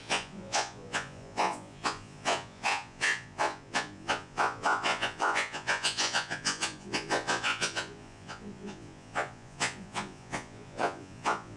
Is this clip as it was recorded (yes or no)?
no